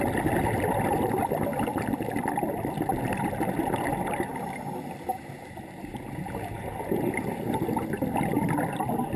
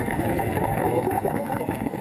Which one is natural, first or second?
first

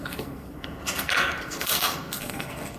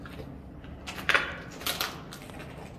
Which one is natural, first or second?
second